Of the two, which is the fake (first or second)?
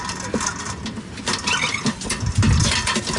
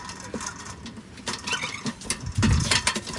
second